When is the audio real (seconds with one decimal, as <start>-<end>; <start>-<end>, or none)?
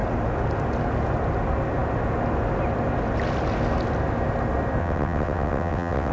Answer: 0.0-4.8